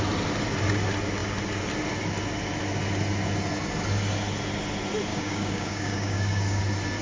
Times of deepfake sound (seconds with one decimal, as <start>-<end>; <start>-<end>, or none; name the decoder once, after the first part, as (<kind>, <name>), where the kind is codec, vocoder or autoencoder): 5.1-6.6 (codec, DAC)